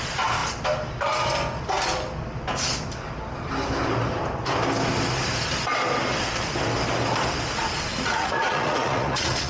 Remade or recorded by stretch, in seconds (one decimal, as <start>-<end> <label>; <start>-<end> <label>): 0.0-7.9 recorded; 7.9-9.5 remade